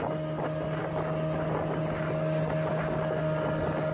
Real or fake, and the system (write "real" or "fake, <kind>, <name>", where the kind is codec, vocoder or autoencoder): real